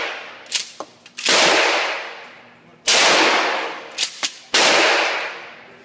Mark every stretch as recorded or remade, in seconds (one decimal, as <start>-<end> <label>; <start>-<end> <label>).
0.0-5.8 recorded